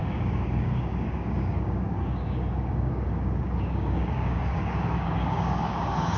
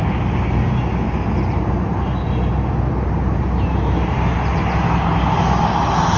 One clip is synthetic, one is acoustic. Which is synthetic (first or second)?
first